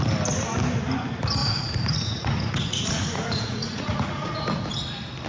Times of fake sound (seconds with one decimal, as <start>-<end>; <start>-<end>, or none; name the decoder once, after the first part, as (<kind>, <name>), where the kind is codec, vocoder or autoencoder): 1.4-4.4 (vocoder, Vocos)